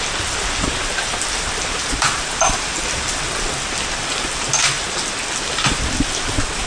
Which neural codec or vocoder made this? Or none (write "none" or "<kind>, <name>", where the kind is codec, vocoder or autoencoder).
none